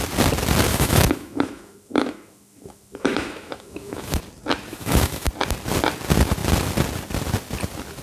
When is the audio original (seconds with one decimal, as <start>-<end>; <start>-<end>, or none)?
0.0-0.7; 4.2-4.7; 5.3-8.0